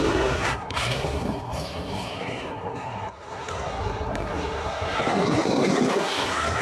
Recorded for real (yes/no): no